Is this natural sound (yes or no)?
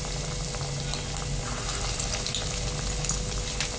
yes